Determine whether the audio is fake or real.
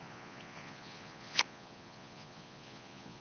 fake